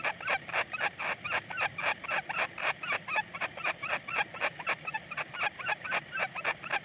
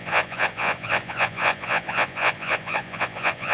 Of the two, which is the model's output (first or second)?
second